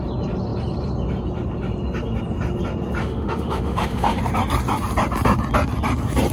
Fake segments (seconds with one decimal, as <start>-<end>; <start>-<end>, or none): 3.0-4.2